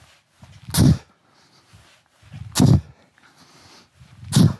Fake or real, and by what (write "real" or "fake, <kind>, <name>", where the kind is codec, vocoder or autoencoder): real